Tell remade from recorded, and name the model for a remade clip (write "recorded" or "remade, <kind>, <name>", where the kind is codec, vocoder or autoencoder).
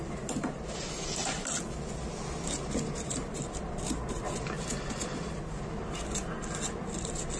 recorded